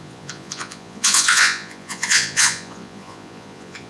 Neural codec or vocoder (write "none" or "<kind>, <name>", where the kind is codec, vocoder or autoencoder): vocoder, Vocos